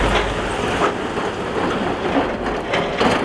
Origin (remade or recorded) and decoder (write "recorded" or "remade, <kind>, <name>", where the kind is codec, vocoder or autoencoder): recorded